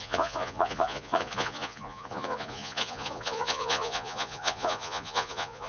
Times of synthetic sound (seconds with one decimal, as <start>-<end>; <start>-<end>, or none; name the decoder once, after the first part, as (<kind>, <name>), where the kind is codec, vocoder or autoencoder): 0.0-5.7 (vocoder, Vocos)